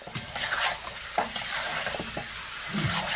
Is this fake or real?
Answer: real